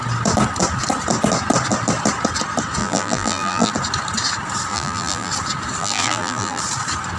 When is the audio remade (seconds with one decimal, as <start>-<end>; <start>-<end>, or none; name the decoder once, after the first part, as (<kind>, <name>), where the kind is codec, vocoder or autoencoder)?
2.8-3.7 (vocoder, BigVGAN v2); 4.7-5.3; 5.8-6.6